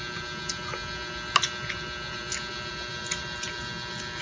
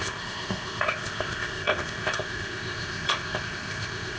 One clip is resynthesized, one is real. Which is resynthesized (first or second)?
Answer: second